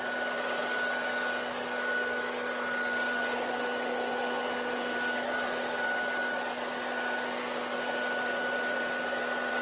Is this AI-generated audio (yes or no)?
no